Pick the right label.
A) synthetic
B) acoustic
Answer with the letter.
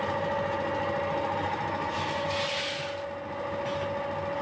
B